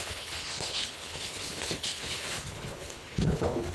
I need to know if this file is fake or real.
fake